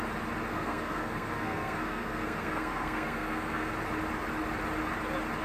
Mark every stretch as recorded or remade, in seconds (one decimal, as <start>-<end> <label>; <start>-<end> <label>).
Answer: 0.0-0.5 recorded; 0.5-3.7 remade; 3.7-5.4 recorded